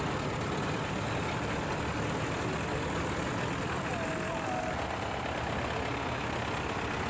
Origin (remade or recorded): recorded